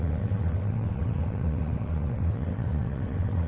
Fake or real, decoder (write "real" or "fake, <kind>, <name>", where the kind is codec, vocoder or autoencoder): fake, vocoder, WaveNeXt